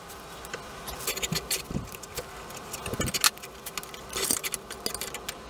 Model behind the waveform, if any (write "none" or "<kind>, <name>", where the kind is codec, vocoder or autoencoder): none